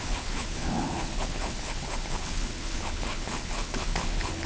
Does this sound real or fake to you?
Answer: fake